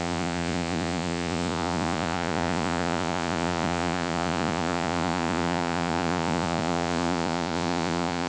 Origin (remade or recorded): remade